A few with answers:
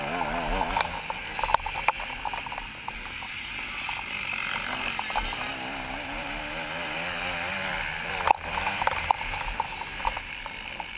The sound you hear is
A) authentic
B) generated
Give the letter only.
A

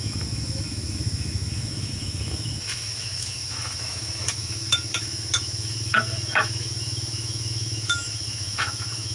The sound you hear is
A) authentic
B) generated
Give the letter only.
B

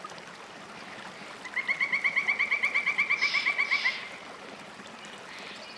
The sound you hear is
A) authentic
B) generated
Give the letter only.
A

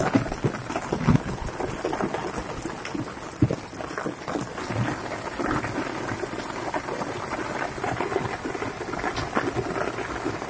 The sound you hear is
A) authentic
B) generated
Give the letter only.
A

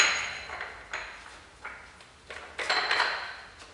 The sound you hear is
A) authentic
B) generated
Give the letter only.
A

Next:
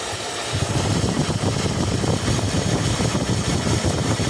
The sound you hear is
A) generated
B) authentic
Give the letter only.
B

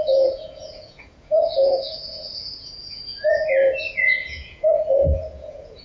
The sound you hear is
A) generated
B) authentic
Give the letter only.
A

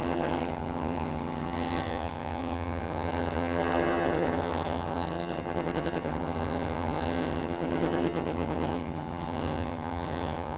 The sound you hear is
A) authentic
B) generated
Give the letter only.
B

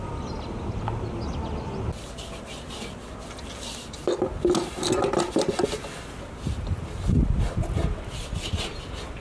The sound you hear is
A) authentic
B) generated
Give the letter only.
A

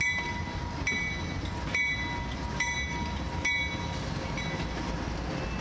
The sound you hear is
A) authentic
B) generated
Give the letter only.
A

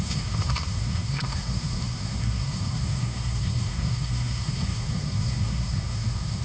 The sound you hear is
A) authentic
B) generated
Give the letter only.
B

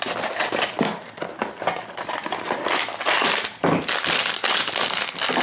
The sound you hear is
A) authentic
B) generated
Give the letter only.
A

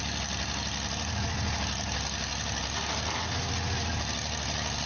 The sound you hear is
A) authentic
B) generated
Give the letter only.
A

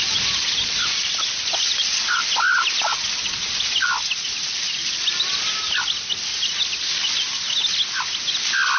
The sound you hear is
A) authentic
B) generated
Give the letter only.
A